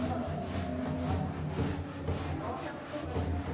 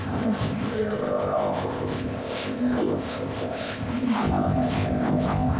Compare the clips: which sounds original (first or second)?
first